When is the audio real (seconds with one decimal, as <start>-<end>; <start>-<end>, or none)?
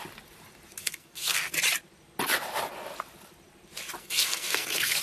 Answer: 0.0-0.8; 1.5-4.0